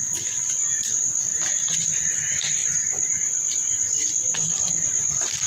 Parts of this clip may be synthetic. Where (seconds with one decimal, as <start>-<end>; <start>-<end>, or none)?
1.3-1.9; 2.6-5.5